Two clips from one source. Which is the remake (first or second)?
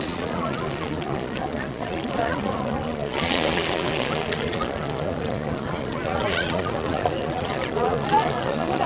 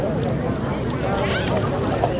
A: first